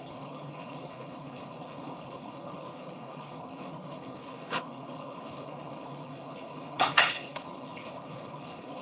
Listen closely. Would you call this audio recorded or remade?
remade